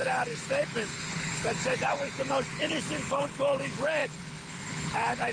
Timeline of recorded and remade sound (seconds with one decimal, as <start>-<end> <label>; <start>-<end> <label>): 0.0-5.3 remade